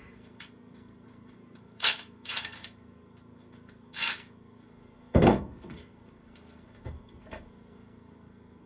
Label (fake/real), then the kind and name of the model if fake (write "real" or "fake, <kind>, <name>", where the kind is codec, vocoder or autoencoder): fake, codec, SNAC